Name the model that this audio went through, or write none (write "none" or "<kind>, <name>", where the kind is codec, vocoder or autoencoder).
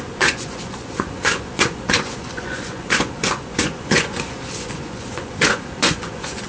vocoder, Vocos